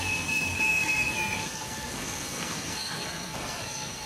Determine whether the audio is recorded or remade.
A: remade